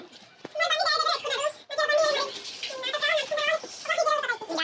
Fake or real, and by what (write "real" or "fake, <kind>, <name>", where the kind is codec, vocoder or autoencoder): real